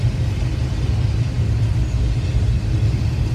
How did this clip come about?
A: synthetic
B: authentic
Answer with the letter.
B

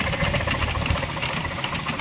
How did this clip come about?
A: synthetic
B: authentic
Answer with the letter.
B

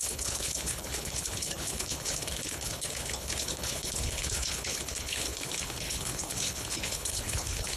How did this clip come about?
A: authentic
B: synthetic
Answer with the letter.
B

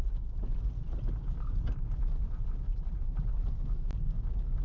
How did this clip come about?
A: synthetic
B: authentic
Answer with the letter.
B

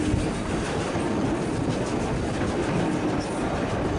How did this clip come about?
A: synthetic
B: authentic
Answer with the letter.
B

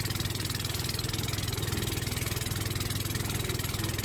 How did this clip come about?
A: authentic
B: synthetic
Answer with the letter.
A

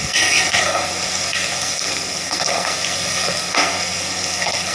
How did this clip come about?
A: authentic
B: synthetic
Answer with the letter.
B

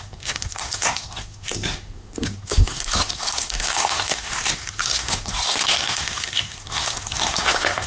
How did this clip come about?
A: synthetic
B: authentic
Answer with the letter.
A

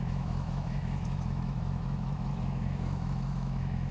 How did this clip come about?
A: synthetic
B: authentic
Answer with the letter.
A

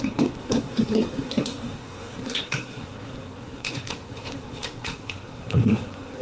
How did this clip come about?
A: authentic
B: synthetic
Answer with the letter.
B